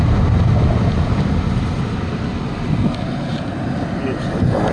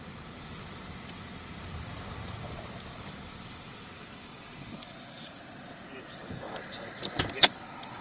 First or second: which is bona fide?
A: first